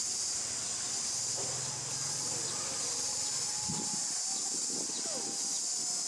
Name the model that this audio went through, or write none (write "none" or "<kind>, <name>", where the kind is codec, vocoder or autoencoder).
none